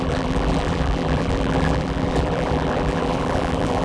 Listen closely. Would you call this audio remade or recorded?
remade